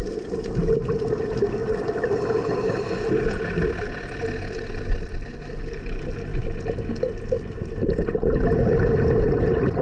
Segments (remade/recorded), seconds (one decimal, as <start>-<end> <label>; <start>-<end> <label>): 0.0-9.8 recorded